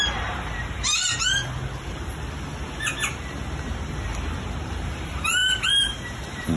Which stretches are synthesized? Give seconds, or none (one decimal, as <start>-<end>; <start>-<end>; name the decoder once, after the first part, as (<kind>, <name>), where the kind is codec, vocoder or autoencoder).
0.0-1.2 (vocoder, BigVGAN v2); 4.7-6.6